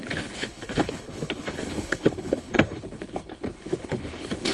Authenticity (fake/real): fake